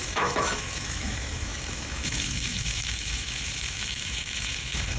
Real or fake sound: fake